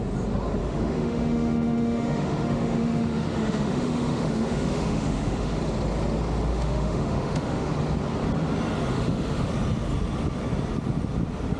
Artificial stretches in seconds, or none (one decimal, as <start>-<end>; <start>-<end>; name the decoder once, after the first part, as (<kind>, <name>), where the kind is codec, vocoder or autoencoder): 0.6-5.6 (autoencoder, DAC-VAE); 6.5-7.7; 8.9-9.5